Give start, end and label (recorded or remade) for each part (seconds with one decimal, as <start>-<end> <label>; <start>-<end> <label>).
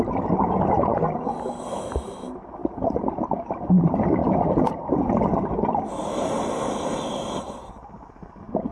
0.0-2.6 recorded; 2.6-3.3 remade; 3.3-8.7 recorded